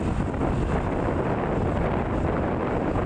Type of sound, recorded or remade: recorded